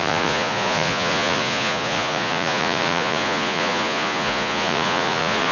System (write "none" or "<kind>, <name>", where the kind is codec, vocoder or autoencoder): vocoder, Vocos